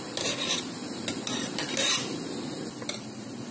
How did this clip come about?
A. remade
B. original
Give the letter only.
B